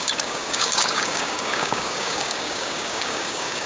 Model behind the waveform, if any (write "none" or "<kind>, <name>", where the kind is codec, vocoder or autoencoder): codec, DAC